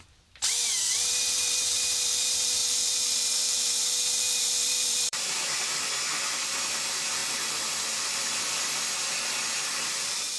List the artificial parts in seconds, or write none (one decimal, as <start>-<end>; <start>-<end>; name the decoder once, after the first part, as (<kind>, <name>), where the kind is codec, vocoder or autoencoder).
0.0-2.6 (vocoder, BigVGAN v2); 4.4-10.4